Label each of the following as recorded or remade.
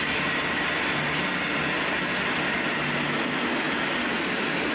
recorded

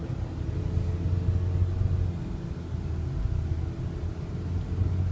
recorded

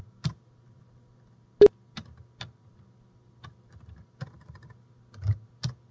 recorded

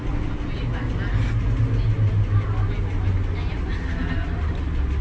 recorded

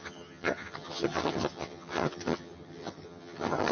remade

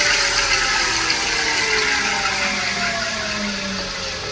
recorded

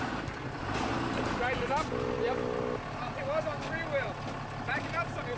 recorded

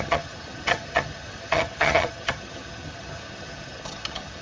remade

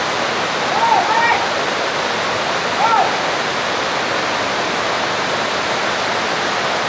recorded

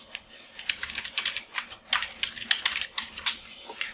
recorded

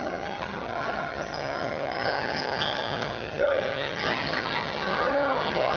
remade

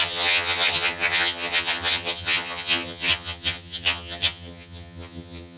remade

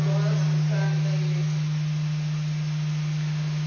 recorded